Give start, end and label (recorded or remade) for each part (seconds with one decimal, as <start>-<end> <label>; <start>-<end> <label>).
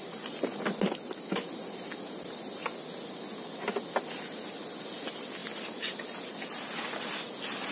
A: 0.0-7.7 recorded